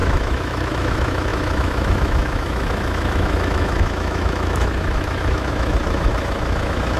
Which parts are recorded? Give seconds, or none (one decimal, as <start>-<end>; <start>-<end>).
none